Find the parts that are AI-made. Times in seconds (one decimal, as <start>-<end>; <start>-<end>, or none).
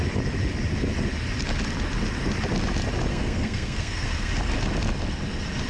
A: 3.1-4.3